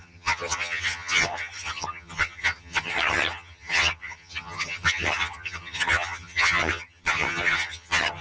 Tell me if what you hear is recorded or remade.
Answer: remade